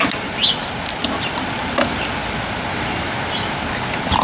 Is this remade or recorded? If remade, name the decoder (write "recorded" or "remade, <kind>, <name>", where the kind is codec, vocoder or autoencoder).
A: recorded